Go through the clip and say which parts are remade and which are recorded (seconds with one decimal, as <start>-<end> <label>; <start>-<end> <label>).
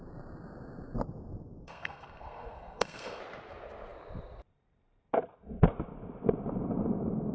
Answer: 0.0-1.6 recorded; 1.6-3.2 remade; 3.2-7.3 recorded